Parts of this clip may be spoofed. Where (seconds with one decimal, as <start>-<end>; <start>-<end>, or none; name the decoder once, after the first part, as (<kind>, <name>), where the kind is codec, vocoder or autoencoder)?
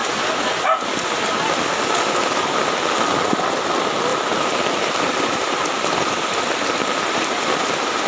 4.1-6.4 (vocoder, BigVGAN v2)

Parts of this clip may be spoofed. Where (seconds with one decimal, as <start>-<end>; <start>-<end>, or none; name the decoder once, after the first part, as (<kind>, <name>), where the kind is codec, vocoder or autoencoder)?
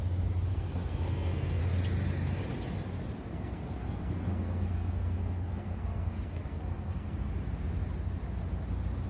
0.5-1.6 (codec, SNAC); 3.3-7.3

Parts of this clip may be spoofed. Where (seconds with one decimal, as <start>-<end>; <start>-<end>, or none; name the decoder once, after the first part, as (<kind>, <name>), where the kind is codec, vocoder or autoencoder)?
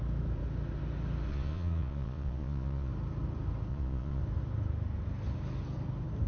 1.3-2.9 (vocoder, Vocos); 3.7-4.2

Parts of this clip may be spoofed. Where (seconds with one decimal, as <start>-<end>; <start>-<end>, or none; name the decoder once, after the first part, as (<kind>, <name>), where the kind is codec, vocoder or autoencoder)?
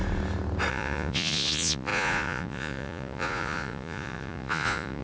0.7-5.0 (vocoder, Vocos)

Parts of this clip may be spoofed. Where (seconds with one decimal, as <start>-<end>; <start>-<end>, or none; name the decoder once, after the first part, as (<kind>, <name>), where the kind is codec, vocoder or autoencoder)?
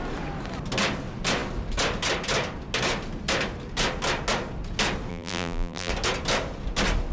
5.1-5.9 (vocoder, BigVGAN v2)